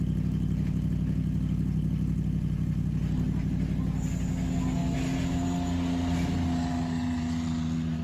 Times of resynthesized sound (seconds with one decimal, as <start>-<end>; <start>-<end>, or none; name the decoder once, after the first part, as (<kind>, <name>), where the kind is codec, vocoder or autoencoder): none